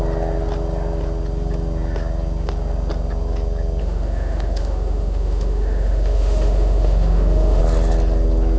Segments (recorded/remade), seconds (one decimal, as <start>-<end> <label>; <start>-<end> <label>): 0.0-3.8 recorded; 3.8-7.6 remade; 7.6-8.6 recorded